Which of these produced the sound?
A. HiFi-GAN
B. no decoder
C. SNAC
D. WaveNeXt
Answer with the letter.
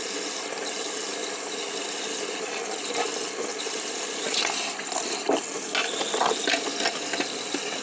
B